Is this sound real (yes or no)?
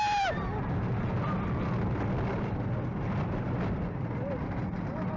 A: yes